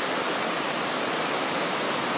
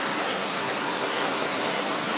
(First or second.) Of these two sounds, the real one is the first